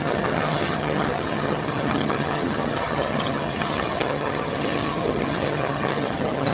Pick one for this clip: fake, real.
fake